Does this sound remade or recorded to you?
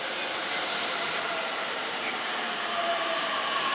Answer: remade